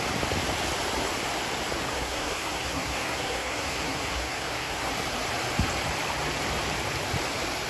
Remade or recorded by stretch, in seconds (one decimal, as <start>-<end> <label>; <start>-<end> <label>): 0.0-1.9 recorded; 1.9-4.9 remade; 4.9-7.7 recorded